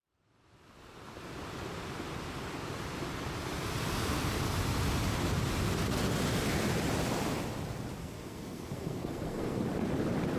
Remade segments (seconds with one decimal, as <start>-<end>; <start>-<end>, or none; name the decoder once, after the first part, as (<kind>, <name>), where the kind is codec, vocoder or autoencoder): 8.0-9.7 (codec, SNAC)